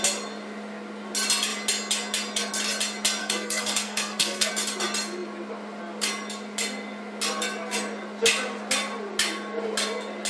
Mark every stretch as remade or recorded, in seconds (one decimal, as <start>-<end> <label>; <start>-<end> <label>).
0.0-3.2 recorded; 3.2-4.5 remade; 4.5-10.3 recorded